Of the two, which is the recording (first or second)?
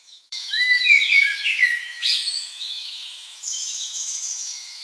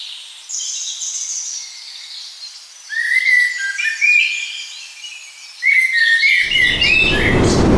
second